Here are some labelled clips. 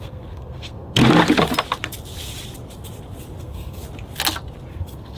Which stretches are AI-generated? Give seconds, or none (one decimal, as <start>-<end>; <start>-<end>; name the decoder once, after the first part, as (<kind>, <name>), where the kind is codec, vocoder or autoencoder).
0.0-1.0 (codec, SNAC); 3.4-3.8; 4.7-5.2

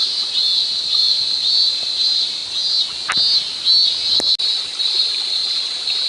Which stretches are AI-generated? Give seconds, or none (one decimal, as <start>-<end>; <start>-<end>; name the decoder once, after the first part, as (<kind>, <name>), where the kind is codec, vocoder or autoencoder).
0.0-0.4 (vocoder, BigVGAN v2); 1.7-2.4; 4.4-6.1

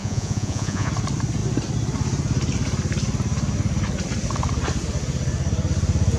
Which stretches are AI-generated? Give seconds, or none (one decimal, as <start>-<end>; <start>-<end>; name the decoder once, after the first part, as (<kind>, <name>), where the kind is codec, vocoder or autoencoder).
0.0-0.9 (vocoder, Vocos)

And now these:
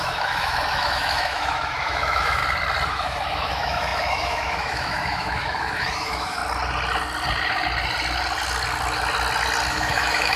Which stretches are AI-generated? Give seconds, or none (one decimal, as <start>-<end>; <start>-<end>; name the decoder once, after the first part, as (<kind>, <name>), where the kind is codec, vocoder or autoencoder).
0.0-2.4 (autoencoder, DAC-VAE); 2.9-6.4; 9.7-10.4